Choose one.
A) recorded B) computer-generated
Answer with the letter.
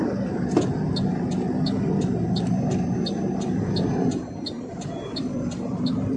A